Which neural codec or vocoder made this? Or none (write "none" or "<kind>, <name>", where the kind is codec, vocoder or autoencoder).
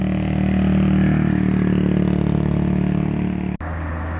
none